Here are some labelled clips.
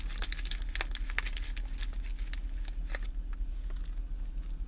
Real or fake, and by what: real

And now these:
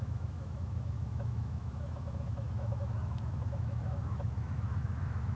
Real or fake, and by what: fake, autoencoder, DAC-VAE